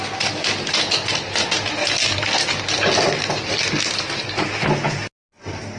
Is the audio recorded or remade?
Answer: recorded